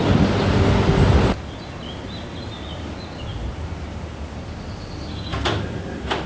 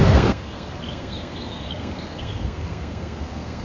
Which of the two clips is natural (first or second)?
first